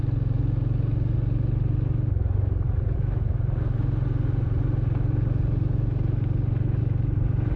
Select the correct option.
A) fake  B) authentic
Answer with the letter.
B